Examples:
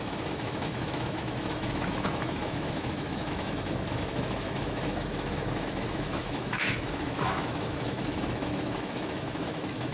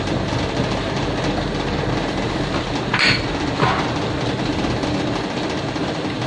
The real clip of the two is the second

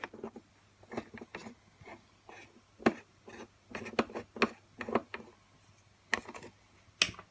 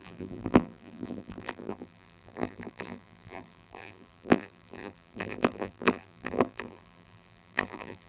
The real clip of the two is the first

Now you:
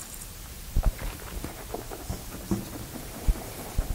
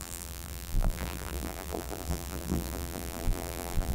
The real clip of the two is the first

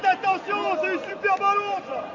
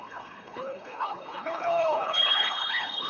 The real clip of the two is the first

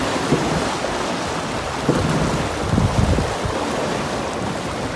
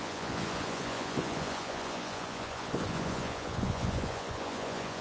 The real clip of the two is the first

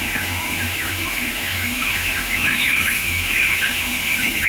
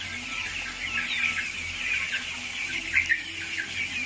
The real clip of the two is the second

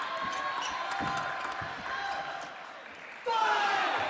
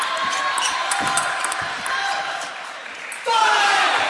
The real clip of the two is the first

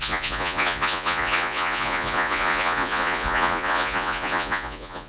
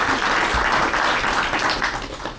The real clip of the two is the second